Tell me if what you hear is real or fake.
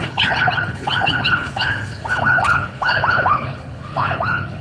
fake